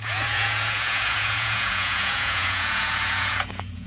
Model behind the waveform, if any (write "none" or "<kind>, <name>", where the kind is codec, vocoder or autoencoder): vocoder, Vocos